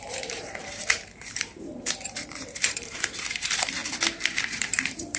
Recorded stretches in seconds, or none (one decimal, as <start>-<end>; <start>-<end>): 3.8-4.4